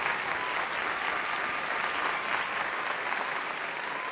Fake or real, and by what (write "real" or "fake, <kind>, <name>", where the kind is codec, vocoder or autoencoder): real